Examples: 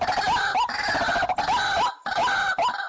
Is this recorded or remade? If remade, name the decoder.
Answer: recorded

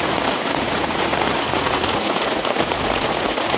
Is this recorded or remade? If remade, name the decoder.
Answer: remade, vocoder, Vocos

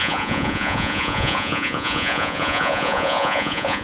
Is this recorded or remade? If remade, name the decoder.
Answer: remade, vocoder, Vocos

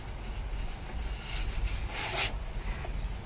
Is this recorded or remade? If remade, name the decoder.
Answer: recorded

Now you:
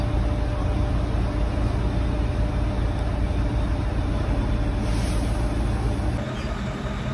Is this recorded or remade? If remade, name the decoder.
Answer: recorded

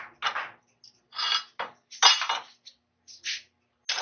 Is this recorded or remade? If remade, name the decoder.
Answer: recorded